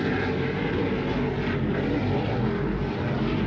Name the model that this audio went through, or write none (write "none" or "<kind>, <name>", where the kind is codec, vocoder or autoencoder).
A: none